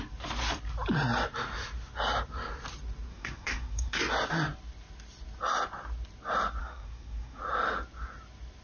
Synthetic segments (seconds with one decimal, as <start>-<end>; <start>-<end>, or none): 3.1-4.0; 6.6-7.4